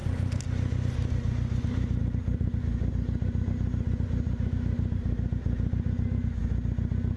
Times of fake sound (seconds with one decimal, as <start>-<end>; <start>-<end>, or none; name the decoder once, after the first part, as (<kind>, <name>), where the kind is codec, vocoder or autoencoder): none

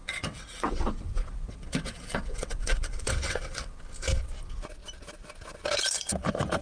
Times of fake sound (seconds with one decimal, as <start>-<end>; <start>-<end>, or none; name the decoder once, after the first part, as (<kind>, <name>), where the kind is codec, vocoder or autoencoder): 0.0-3.7 (vocoder, WaveNeXt)

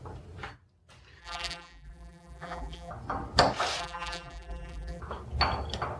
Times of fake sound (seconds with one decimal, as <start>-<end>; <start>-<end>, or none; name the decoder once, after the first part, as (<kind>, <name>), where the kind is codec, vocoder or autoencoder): 1.2-2.9 (vocoder, BigVGAN v2); 3.8-5.0

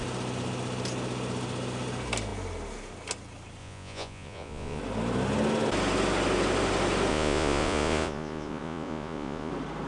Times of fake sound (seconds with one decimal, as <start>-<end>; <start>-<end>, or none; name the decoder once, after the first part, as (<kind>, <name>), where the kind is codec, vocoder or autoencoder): 3.6-4.8 (vocoder, Vocos); 7.1-9.5

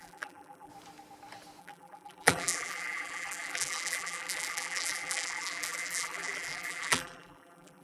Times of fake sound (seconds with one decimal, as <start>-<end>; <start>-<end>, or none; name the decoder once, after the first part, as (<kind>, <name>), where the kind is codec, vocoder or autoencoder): 0.0-0.7 (vocoder, BigVGAN v2); 1.6-7.8

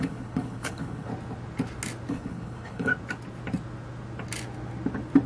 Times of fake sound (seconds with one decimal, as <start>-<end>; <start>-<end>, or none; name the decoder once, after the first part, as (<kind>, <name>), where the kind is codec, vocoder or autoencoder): 0.0-1.1 (codec, HILCodec); 2.1-2.9